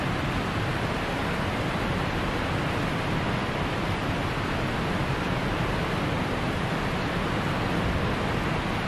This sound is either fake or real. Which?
real